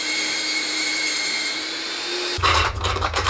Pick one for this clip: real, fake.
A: fake